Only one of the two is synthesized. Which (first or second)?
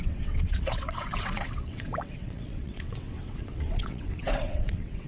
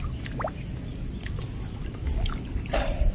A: first